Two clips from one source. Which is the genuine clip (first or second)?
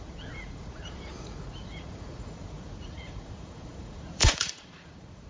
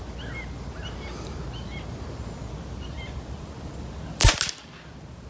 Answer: second